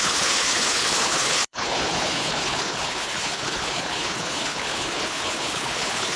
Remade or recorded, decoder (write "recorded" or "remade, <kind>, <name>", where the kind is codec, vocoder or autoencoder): remade, codec, HILCodec